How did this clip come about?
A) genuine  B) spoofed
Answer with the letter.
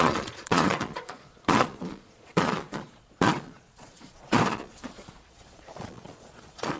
B